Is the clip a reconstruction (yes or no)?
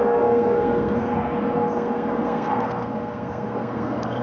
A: yes